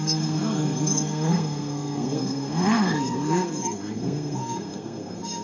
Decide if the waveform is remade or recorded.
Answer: remade